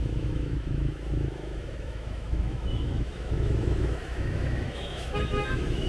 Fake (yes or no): yes